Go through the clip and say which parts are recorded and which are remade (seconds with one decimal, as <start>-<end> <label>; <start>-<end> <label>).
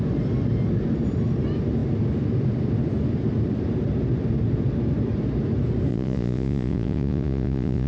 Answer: 0.0-5.9 recorded; 5.9-7.9 remade